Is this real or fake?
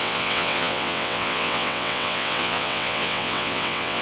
fake